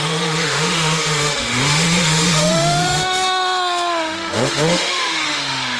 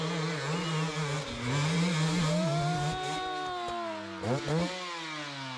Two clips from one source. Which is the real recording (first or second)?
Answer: second